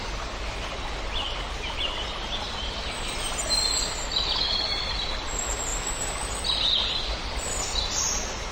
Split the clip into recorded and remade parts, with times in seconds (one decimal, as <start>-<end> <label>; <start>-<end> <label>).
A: 0.0-8.5 recorded